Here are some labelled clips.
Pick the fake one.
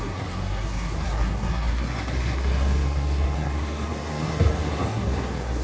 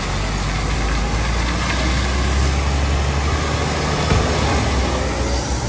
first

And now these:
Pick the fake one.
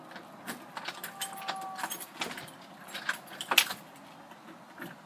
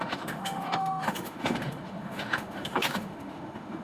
second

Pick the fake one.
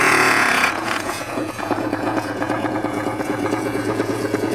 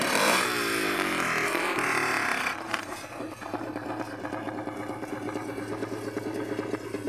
first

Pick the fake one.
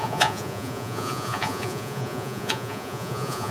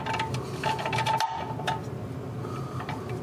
first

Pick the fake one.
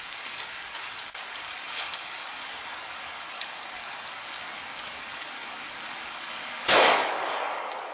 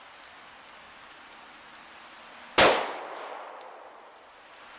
first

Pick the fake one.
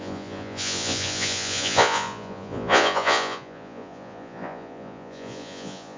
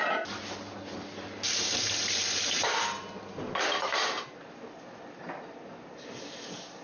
first